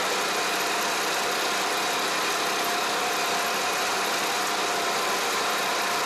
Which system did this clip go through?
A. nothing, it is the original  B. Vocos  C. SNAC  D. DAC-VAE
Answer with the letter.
A